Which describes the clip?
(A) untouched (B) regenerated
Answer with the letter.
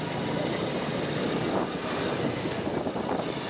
A